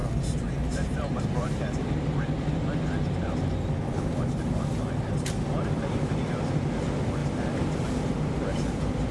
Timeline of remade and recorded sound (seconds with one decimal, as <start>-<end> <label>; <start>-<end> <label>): 0.0-1.6 remade; 1.6-9.1 recorded